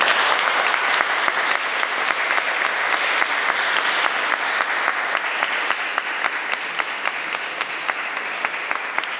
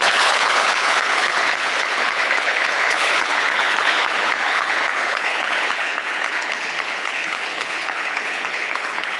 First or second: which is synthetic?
second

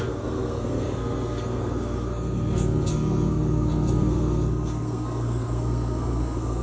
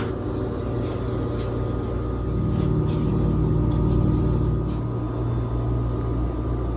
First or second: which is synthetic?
first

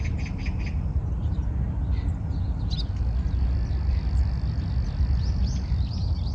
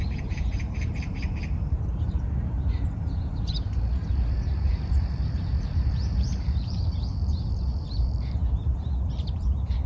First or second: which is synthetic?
second